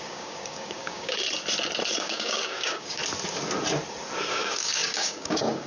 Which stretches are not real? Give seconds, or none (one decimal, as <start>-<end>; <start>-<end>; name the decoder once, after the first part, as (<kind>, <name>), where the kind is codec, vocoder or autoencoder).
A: 0.0-1.2 (codec, DAC); 2.0-3.0; 4.3-5.7